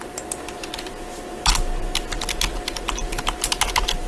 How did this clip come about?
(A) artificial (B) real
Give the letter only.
B